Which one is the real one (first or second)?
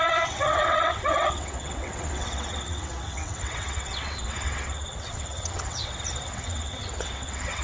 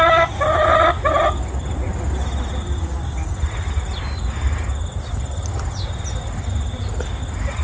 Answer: second